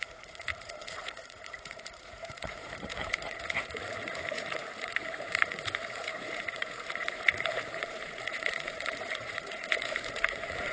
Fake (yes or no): yes